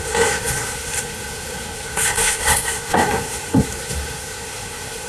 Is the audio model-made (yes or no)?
yes